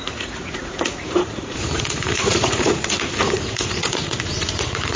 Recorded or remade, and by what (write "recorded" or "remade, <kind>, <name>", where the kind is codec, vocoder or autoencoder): remade, vocoder, Vocos